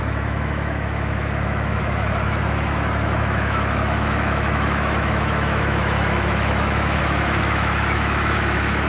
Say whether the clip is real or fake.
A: fake